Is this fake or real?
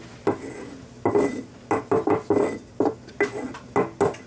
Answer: real